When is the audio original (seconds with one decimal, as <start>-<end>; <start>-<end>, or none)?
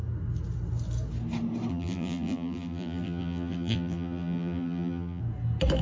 0.0-1.7; 5.2-5.8